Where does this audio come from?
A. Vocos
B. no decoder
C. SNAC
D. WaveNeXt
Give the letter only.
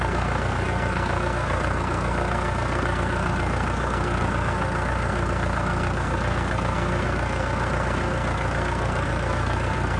C